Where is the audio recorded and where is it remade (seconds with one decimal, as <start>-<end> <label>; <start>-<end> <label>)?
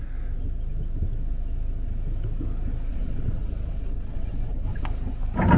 0.0-2.9 recorded; 2.9-4.8 remade; 4.8-5.6 recorded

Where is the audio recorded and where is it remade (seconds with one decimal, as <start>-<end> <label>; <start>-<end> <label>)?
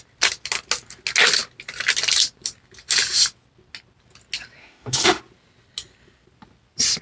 0.0-4.6 recorded; 4.6-5.2 remade; 5.2-7.0 recorded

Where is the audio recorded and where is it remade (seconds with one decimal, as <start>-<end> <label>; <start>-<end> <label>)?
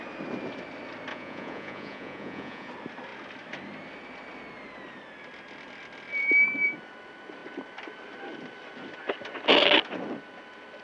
0.0-1.1 recorded; 1.1-2.7 remade; 2.7-10.8 recorded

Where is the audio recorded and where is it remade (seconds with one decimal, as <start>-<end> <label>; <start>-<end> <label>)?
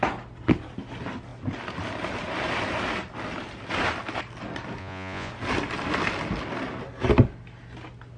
0.0-4.8 recorded; 4.8-5.3 remade; 5.3-8.2 recorded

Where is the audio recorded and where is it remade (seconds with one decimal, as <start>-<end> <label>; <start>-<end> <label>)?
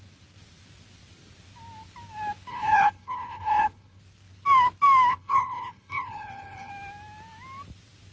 0.0-2.5 recorded; 2.5-4.0 remade; 4.0-5.1 recorded; 5.1-6.7 remade; 6.7-8.1 recorded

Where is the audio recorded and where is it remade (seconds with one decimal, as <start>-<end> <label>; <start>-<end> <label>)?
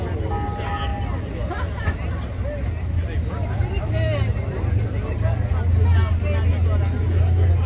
0.0-7.7 recorded